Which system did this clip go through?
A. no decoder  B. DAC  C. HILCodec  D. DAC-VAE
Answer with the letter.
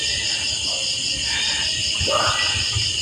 A